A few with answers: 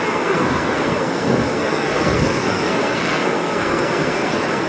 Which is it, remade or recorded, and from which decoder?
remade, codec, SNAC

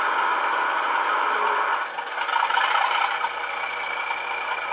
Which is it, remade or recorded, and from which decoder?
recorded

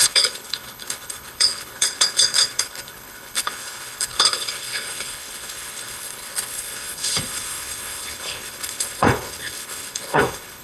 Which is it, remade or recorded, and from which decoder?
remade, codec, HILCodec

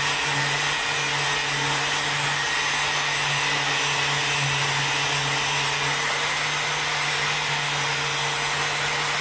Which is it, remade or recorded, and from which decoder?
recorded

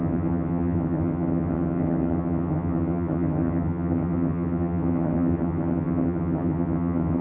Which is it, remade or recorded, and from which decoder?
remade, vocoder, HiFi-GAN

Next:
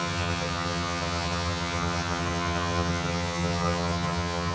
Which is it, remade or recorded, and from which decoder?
remade, vocoder, HiFi-GAN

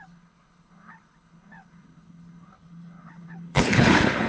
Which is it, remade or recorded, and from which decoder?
remade, codec, HILCodec